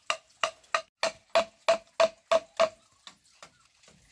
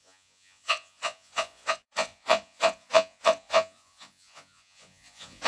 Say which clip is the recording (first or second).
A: first